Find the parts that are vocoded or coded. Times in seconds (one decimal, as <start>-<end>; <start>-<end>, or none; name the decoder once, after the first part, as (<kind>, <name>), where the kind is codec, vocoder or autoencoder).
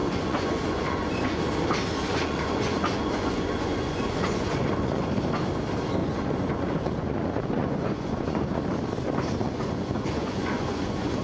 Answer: 0.0-1.5 (vocoder, Vocos); 2.1-5.0; 6.0-8.6; 9.4-11.2